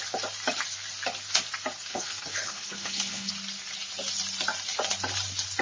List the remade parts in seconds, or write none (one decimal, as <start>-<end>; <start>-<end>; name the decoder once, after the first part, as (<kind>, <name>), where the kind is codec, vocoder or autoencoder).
1.9-3.3 (codec, HILCodec)